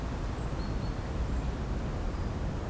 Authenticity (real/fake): real